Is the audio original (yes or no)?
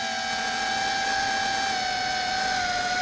yes